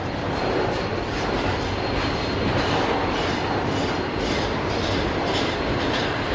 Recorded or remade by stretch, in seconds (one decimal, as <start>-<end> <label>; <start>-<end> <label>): 0.0-6.3 recorded